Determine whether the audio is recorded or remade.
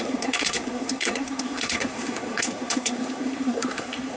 remade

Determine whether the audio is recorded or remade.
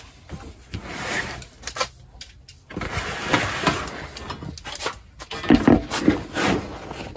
recorded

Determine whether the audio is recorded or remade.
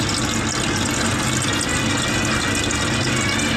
recorded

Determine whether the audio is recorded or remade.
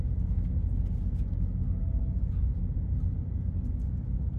recorded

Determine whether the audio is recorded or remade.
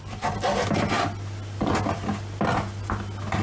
recorded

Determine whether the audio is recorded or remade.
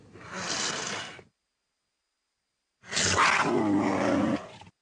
recorded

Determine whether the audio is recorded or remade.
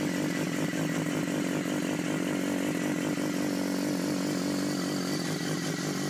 recorded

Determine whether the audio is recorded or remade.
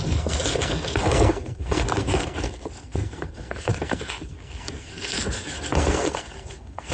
remade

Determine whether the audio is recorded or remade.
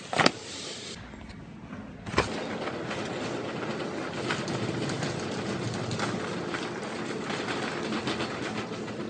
recorded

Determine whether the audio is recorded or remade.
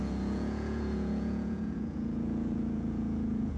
remade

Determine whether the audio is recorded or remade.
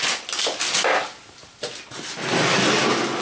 recorded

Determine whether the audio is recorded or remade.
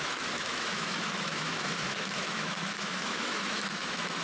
remade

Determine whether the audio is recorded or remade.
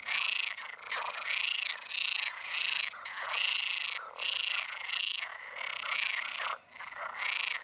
recorded